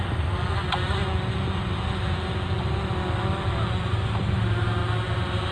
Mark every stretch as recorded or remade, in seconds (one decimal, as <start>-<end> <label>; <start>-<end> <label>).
0.0-5.5 recorded